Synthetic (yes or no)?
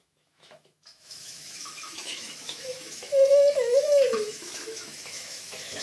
yes